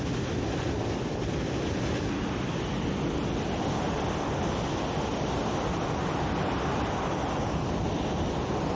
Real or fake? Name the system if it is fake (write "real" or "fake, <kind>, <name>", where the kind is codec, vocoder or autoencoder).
real